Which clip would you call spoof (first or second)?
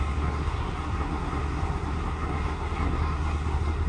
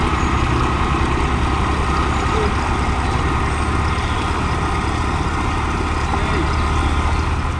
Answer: first